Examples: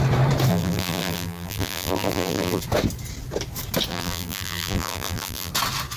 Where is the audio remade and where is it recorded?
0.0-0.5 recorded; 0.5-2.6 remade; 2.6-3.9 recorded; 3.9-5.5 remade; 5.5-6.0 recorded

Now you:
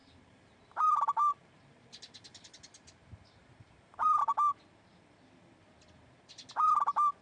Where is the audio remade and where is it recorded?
0.0-4.2 remade; 4.2-7.2 recorded

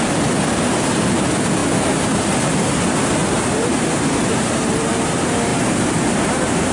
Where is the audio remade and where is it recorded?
0.0-3.2 recorded; 3.2-4.9 remade; 4.9-6.7 recorded

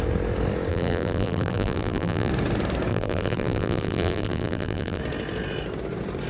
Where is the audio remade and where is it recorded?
0.0-0.7 recorded; 0.7-2.3 remade; 2.3-2.9 recorded; 2.9-5.0 remade; 5.0-6.3 recorded